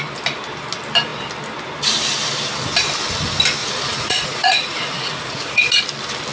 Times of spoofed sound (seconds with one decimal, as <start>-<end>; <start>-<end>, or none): 3.6-5.8